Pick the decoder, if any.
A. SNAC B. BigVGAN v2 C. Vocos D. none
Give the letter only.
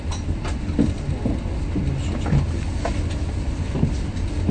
D